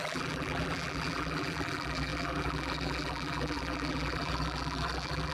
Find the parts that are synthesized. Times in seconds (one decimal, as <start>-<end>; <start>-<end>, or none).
0.0-5.3